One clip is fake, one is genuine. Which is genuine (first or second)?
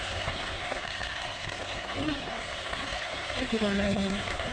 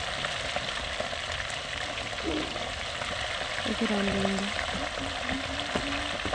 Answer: second